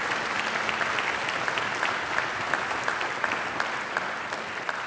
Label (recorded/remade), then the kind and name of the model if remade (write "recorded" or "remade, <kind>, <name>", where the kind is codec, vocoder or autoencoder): recorded